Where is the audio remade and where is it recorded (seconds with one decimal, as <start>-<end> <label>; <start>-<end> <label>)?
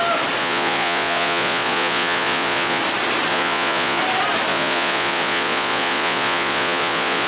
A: 0.0-0.4 recorded; 0.4-2.8 remade; 2.8-3.3 recorded; 3.3-4.0 remade; 4.0-4.5 recorded; 4.5-7.3 remade